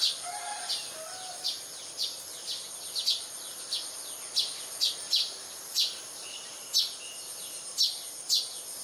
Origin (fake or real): real